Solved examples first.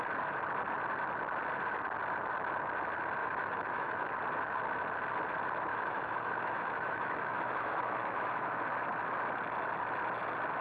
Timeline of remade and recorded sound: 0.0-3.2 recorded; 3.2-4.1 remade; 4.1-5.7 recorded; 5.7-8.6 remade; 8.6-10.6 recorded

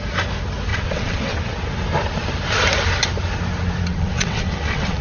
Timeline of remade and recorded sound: 0.0-0.7 recorded; 0.7-1.4 remade; 1.4-3.9 recorded; 3.9-5.0 remade